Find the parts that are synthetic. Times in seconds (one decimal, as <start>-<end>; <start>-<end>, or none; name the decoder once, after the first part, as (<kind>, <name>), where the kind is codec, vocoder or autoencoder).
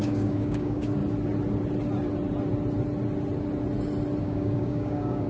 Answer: 0.0-1.0 (codec, DAC); 4.2-5.3